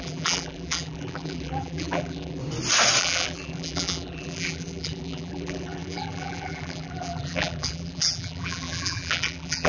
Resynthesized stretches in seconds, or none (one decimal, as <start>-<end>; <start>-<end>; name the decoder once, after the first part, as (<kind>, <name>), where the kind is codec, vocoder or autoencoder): 0.0-2.4 (vocoder, BigVGAN v2); 3.0-9.7